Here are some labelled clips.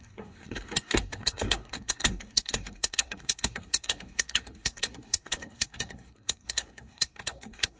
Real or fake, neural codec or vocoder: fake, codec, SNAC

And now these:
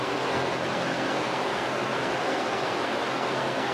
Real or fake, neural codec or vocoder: fake, codec, SNAC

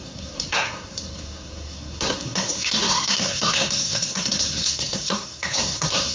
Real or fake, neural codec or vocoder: fake, codec, SNAC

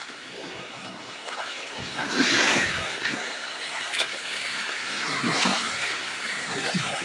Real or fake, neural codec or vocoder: fake, codec, SNAC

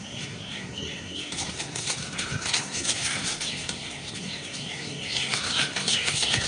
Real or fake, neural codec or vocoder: fake, codec, SNAC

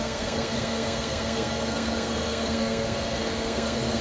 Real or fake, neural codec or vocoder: fake, codec, SNAC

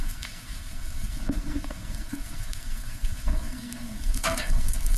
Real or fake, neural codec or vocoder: fake, codec, SNAC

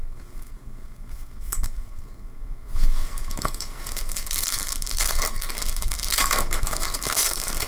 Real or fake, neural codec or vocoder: fake, codec, SNAC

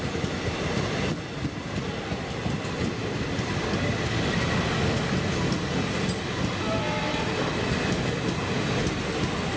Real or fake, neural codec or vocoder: real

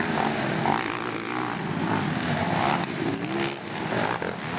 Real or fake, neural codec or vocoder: real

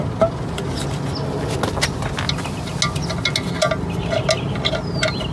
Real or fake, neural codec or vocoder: real